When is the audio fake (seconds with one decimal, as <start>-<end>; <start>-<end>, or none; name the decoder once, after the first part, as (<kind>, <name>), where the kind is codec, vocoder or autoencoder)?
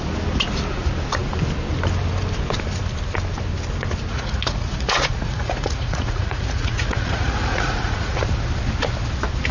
4.1-8.2 (vocoder, Vocos)